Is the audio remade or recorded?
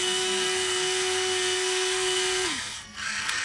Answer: remade